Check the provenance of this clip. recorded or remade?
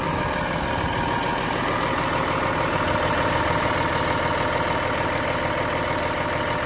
recorded